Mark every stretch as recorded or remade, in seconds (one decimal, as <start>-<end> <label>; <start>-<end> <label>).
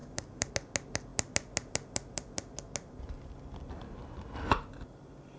0.0-0.5 remade; 0.5-5.4 recorded